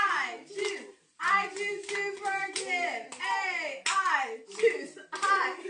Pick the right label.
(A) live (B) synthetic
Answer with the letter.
A